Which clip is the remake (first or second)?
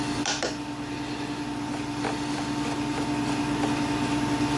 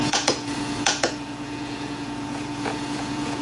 second